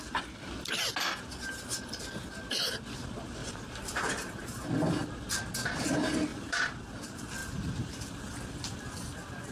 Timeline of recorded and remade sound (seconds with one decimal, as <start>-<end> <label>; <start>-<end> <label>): 0.0-3.4 recorded; 3.4-4.7 remade; 4.7-6.3 recorded; 6.3-6.8 remade; 6.8-7.4 recorded; 7.4-8.2 remade; 8.2-9.5 recorded